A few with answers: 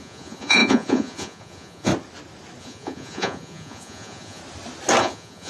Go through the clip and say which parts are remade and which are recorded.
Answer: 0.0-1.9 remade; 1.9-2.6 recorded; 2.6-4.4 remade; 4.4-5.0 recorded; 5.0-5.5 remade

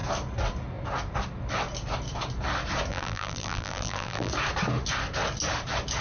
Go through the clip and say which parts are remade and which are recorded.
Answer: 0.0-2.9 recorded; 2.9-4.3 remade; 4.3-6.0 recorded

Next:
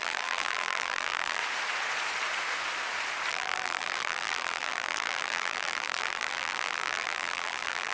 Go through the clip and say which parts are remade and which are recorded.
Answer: 0.0-1.4 remade; 1.4-3.3 recorded; 3.3-7.9 remade

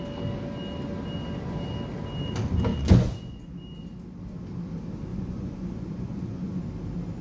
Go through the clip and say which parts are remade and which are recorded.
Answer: 0.0-2.7 recorded; 2.7-3.5 remade; 3.5-5.1 recorded; 5.1-6.6 remade; 6.6-7.2 recorded

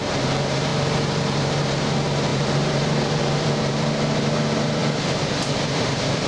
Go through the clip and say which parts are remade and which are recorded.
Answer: 0.0-6.3 remade